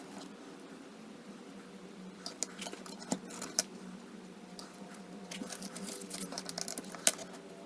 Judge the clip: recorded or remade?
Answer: recorded